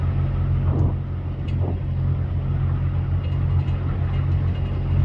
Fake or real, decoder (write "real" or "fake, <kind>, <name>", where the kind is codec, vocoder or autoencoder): real